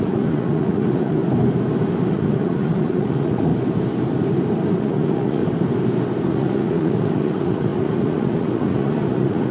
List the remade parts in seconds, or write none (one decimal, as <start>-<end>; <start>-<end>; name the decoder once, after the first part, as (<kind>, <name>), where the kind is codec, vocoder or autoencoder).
0.0-1.2 (vocoder, Vocos); 2.1-3.5; 4.8-5.4; 6.3-9.5